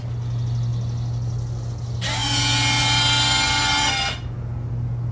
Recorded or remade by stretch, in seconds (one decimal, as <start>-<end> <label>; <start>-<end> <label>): 0.0-5.1 recorded